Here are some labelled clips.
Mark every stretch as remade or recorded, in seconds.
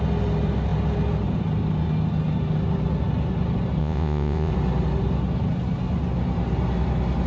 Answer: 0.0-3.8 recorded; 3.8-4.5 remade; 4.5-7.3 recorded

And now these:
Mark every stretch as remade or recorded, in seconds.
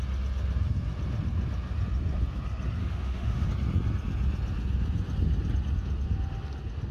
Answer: 0.0-2.8 recorded; 2.8-3.5 remade; 3.5-6.9 recorded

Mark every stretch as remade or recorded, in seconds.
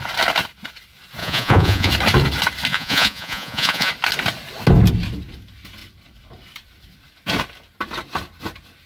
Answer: 0.0-1.2 recorded; 1.2-1.9 remade; 1.9-2.7 recorded; 2.7-3.9 remade; 3.9-8.9 recorded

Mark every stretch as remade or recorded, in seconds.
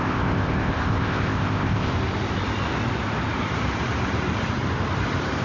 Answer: 0.0-1.9 remade; 1.9-5.4 recorded